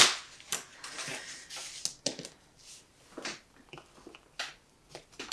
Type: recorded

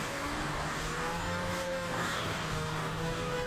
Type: remade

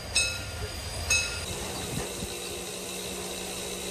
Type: recorded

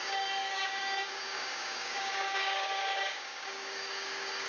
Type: remade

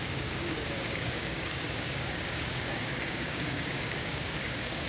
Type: remade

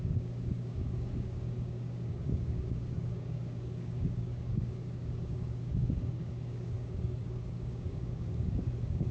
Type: remade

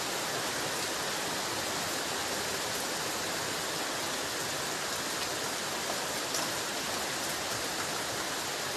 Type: recorded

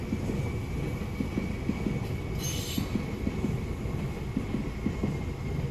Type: recorded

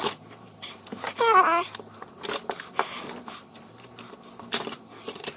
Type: recorded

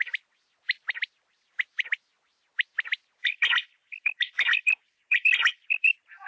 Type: recorded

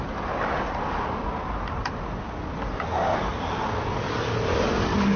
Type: recorded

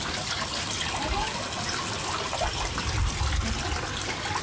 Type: recorded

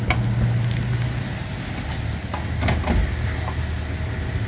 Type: recorded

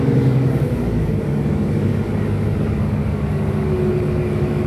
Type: remade